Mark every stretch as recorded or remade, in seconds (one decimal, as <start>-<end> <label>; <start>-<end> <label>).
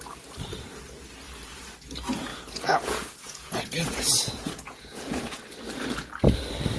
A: 0.0-2.3 recorded; 2.3-5.4 remade; 5.4-6.8 recorded